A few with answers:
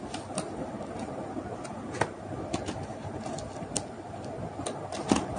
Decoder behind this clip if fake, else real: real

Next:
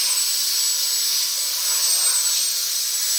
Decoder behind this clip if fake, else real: real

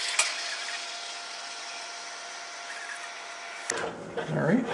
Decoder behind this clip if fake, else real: real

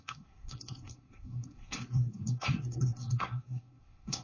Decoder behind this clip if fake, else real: fake, codec, SNAC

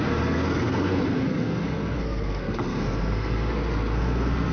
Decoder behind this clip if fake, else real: fake, codec, SNAC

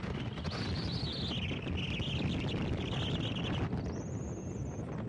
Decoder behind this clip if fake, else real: real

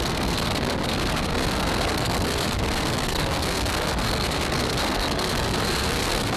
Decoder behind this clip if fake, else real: fake, codec, SNAC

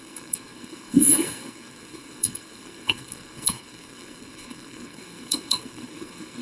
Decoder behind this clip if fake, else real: fake, codec, SNAC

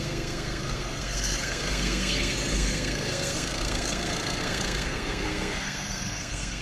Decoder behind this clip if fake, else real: fake, codec, SNAC